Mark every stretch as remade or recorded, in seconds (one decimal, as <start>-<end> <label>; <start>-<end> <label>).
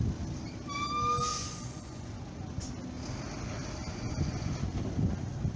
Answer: 0.0-1.3 recorded; 1.3-2.7 remade; 2.7-3.8 recorded; 3.8-4.5 remade; 4.5-5.6 recorded